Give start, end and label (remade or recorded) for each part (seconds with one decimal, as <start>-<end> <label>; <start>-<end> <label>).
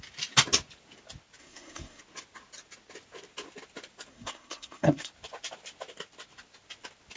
0.0-1.4 recorded; 1.4-2.0 remade; 2.0-4.1 recorded; 4.1-5.1 remade; 5.1-7.2 recorded